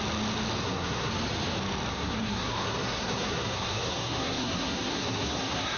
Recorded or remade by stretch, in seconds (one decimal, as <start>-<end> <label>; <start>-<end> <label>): 0.0-0.6 recorded; 0.6-1.1 remade; 1.1-1.9 recorded; 1.9-5.8 remade